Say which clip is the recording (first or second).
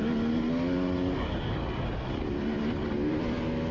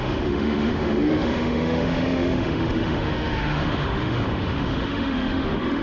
first